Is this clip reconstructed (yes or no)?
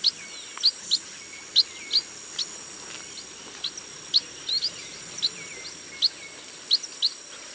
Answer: no